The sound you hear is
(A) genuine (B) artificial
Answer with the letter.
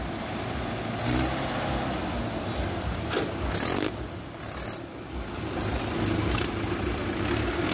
A